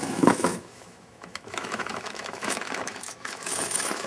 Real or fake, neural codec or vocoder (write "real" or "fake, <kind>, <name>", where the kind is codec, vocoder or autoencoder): fake, autoencoder, DAC-VAE